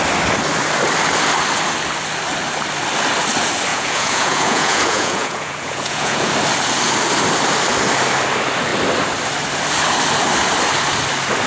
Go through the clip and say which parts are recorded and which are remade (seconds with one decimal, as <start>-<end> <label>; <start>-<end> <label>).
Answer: 0.0-3.7 recorded; 3.7-6.3 remade; 6.3-11.5 recorded